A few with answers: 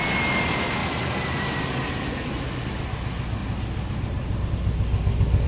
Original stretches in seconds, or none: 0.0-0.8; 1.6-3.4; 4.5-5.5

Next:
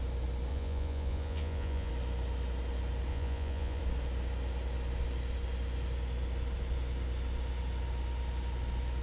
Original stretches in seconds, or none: 0.0-0.5; 1.9-3.1; 3.8-9.0